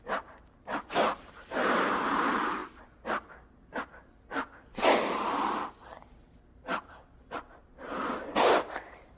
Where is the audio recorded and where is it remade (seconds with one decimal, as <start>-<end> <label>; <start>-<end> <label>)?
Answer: 0.0-2.6 remade; 2.6-7.8 recorded; 7.8-9.2 remade